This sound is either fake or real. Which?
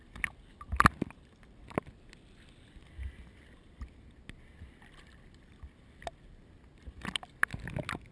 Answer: real